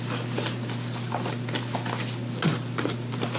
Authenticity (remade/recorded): recorded